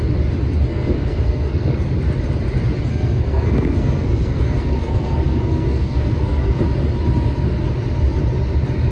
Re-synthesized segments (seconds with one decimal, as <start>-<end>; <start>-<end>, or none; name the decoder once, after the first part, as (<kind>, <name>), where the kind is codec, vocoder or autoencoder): 0.7-1.9 (codec, SNAC); 2.9-6.6

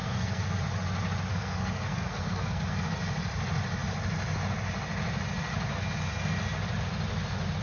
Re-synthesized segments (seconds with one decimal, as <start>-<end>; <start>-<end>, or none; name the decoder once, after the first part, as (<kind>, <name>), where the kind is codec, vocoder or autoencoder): 0.0-0.6 (codec, SNAC); 1.3-2.8

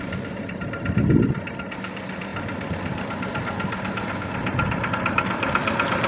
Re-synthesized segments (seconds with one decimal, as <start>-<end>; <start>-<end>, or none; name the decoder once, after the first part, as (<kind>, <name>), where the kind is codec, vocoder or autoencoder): none

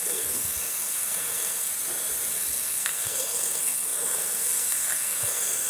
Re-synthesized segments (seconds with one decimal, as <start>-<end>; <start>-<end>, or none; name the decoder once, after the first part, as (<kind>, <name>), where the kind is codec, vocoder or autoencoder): 0.0-1.7 (codec, SNAC); 2.3-5.7

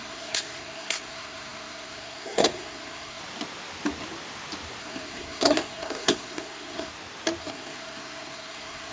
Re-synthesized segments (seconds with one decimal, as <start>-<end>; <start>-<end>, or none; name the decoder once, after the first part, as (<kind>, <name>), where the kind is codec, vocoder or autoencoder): 0.0-3.2 (codec, SNAC); 4.8-6.9; 7.4-8.9

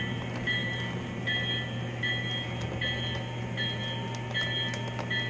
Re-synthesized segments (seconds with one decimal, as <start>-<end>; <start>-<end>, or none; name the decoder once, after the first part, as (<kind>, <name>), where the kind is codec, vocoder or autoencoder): none

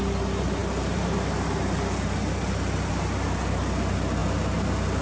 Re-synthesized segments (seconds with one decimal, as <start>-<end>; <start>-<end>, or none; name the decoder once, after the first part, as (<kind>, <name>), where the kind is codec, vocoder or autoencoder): none

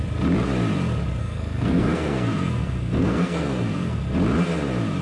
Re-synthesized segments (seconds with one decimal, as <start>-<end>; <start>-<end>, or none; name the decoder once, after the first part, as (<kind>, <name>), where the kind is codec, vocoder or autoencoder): 1.2-4.0 (codec, SNAC)